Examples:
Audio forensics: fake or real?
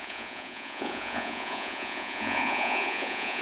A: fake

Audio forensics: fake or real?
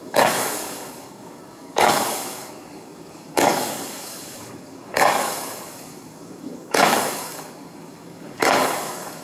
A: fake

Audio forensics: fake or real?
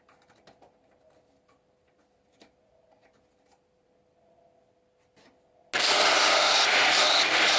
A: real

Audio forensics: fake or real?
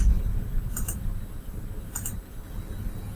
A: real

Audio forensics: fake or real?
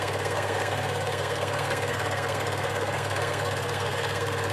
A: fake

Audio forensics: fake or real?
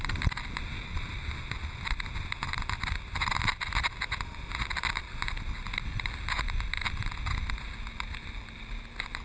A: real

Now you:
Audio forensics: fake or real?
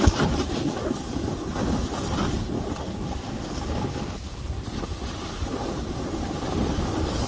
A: real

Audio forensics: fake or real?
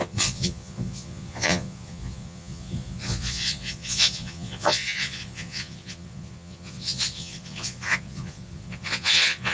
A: fake